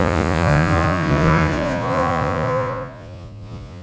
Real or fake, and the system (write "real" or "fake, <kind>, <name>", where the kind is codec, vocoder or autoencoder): fake, vocoder, Vocos